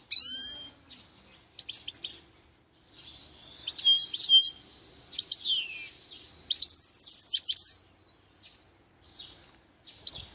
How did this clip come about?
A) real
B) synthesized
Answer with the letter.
A